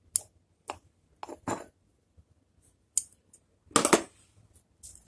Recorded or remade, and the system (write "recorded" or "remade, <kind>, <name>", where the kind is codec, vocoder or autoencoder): recorded